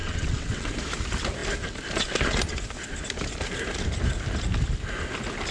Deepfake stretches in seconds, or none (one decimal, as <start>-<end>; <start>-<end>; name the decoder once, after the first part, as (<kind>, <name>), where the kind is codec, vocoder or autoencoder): 0.0-0.7 (vocoder, WaveNeXt)